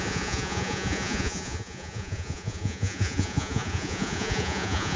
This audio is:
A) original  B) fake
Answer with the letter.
B